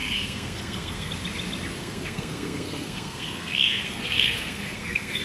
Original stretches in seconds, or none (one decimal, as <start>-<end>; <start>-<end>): 1.1-1.8